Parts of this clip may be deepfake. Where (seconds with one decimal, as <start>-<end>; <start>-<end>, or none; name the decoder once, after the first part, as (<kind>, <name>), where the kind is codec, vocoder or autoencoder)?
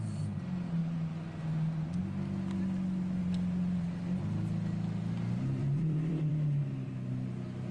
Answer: 3.2-4.2 (vocoder, BigVGAN v2); 5.6-6.3